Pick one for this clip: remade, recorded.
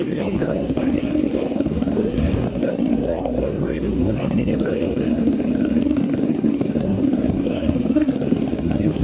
remade